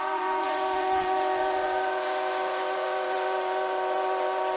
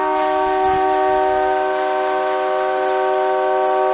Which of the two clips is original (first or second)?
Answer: second